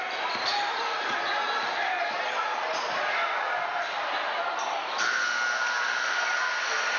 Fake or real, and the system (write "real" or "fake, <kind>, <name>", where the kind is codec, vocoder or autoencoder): real